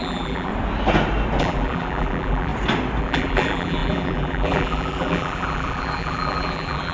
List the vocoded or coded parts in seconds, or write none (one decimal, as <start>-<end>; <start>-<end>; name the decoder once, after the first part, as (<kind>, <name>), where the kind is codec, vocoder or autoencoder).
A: 0.0-0.5 (vocoder, BigVGAN v2); 1.4-2.5; 3.0-6.9